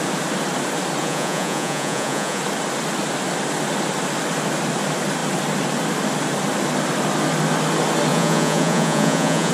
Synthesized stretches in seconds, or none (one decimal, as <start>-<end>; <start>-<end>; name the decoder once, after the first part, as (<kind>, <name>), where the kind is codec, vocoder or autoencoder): 1.0-2.4 (vocoder, Vocos); 8.1-9.5